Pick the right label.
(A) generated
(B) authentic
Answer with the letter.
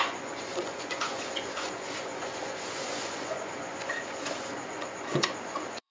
A